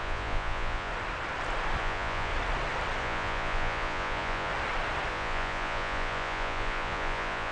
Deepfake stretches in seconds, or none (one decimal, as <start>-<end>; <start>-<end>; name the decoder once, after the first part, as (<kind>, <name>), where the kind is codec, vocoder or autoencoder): 0.0-0.9 (vocoder, Vocos); 1.8-2.3; 3.0-4.5; 5.1-7.5